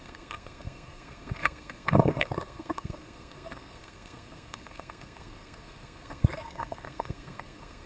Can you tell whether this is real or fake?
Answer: fake